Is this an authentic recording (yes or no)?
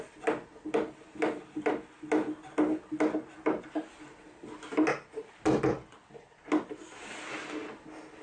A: yes